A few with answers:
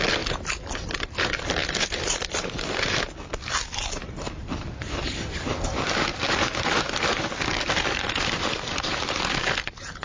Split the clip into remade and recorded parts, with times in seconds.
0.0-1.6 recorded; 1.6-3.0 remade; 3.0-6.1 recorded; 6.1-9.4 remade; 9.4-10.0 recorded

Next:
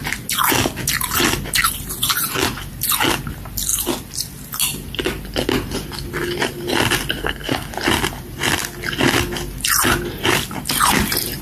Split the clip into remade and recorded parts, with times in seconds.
0.0-7.2 recorded; 7.2-7.7 remade; 7.7-11.4 recorded

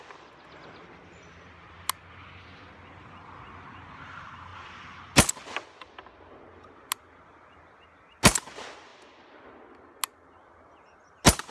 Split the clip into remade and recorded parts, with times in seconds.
0.0-11.5 recorded

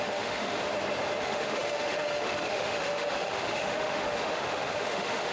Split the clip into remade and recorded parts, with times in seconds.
0.0-0.6 remade; 0.6-1.2 recorded; 1.2-5.3 remade

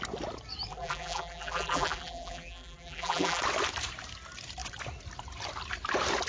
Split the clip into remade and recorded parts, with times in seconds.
0.0-0.7 recorded; 0.7-3.4 remade; 3.4-6.3 recorded